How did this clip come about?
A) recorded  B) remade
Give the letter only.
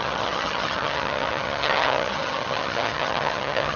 B